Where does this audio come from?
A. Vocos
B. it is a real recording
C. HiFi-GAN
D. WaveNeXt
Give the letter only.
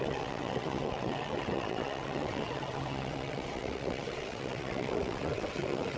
D